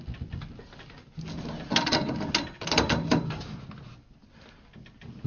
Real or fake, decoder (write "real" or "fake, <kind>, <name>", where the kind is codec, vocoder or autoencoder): real